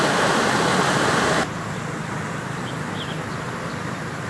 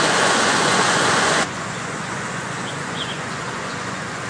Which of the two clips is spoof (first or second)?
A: second